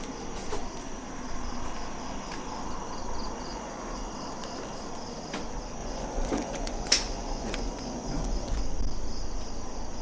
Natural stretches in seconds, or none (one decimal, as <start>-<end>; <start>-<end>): 0.0-3.5; 4.1-5.8; 8.6-10.0